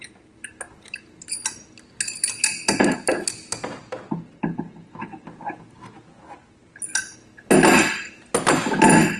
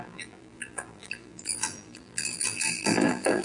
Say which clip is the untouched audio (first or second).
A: first